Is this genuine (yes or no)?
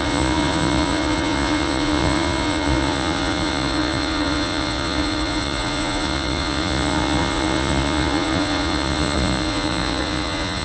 no